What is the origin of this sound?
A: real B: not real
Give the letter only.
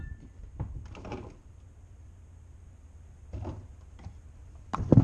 A